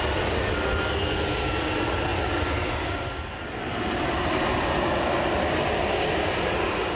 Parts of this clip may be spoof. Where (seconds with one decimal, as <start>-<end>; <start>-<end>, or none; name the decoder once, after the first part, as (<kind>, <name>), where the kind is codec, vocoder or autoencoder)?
none

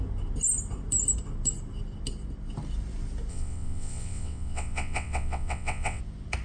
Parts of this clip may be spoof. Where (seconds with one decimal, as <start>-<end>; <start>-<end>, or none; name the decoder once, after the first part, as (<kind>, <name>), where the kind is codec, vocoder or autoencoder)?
3.3-6.0 (vocoder, WaveNeXt)

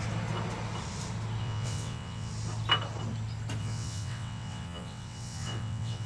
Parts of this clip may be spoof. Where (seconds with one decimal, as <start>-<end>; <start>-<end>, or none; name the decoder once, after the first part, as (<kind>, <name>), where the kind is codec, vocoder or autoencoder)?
1.4-2.3 (vocoder, WaveNeXt); 3.6-6.1

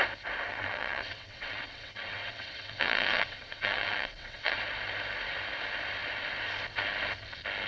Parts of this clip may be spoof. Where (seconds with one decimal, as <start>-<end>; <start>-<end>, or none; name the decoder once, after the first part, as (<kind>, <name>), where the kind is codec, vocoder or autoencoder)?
0.5-4.6 (vocoder, WaveNeXt)

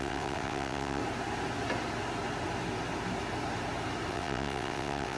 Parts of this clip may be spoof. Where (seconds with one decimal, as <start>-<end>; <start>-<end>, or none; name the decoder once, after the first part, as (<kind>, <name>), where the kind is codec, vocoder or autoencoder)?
0.0-1.0 (vocoder, WaveNeXt); 4.1-5.2

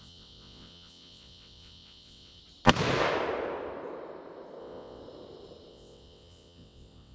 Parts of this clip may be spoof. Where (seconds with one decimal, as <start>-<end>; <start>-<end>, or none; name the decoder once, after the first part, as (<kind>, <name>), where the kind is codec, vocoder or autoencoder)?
0.0-2.4 (vocoder, WaveNeXt); 4.6-5.0; 5.7-7.1